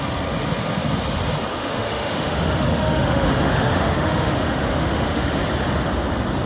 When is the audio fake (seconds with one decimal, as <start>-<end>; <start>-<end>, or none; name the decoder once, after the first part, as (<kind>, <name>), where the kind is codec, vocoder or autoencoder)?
1.5-5.4 (autoencoder, DAC-VAE)